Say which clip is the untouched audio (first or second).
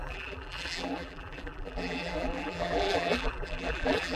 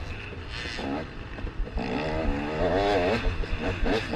second